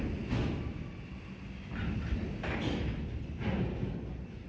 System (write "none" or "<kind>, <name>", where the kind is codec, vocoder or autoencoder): none